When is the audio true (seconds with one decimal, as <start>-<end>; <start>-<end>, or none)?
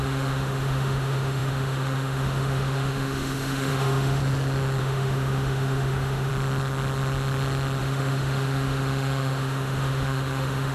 4.2-4.8; 6.3-7.8